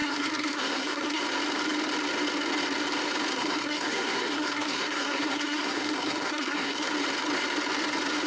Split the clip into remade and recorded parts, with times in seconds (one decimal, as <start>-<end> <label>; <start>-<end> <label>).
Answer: 0.0-1.2 remade; 1.2-3.3 recorded; 3.3-6.9 remade; 6.9-8.3 recorded